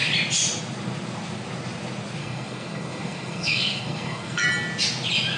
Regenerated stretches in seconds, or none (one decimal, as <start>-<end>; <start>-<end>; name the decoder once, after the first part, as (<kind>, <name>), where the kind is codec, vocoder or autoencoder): 2.2-4.5 (codec, SNAC)